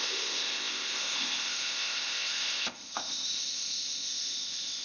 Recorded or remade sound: remade